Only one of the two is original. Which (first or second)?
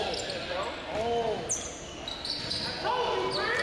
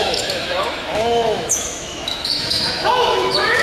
first